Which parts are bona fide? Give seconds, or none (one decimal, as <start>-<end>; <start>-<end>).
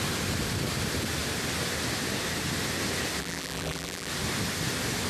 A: 0.0-3.2; 4.1-5.1